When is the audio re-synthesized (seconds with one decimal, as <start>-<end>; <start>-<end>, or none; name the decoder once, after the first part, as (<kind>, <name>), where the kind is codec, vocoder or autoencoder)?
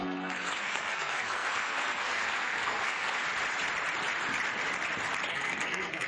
0.0-3.2 (codec, SNAC); 5.3-6.1